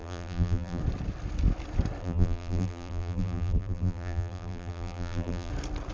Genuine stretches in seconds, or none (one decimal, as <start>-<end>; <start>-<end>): 0.8-2.0; 5.5-5.9